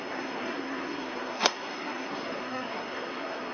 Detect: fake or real fake